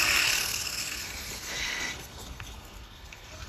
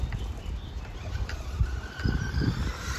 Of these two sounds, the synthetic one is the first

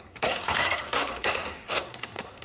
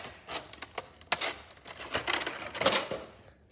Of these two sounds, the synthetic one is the first